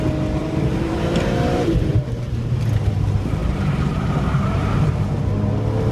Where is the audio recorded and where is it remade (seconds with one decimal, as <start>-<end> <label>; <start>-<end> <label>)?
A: 0.0-0.4 recorded; 0.4-2.6 remade; 2.6-3.4 recorded; 3.4-5.0 remade; 5.0-5.9 recorded